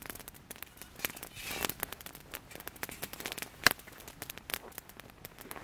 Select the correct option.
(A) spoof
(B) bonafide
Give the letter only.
B